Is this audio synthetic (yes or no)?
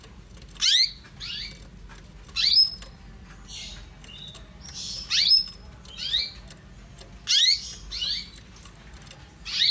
no